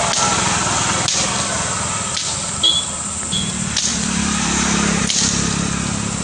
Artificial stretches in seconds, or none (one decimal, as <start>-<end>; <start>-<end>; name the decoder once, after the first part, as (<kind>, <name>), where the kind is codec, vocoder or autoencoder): 3.9-5.0 (vocoder, BigVGAN v2)